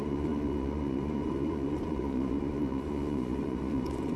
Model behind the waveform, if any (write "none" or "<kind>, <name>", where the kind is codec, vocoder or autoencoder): vocoder, Vocos